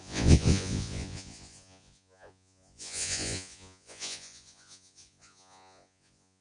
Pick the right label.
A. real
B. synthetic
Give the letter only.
B